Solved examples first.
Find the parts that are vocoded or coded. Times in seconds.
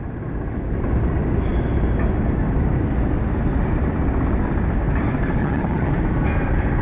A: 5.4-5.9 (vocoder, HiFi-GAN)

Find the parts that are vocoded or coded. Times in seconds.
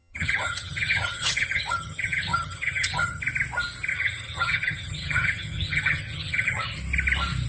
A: 0.0-3.2 (vocoder, HiFi-GAN); 3.9-6.8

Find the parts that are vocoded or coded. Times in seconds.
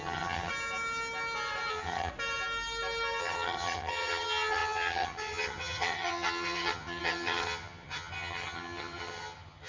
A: 0.0-0.5 (vocoder, HiFi-GAN); 1.7-2.1; 3.2-9.7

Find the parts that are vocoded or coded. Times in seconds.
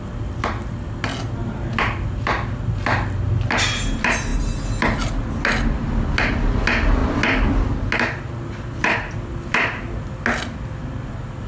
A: none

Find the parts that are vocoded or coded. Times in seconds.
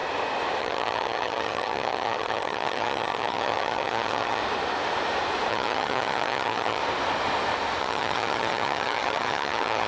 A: 0.6-4.4 (vocoder, HiFi-GAN); 5.5-6.8; 7.8-9.9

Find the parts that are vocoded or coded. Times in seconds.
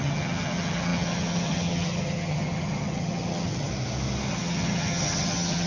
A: 0.0-3.7 (vocoder, HiFi-GAN); 4.3-5.7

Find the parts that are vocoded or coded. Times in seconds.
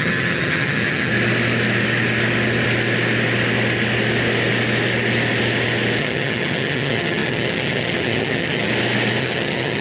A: 0.0-1.1 (vocoder, HiFi-GAN); 6.0-8.7; 9.2-9.8